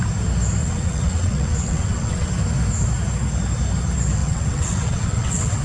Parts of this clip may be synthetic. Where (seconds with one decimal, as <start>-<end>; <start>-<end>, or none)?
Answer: 0.6-2.3; 4.2-5.6